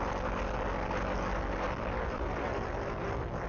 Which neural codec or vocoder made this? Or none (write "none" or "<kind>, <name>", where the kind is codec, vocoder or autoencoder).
none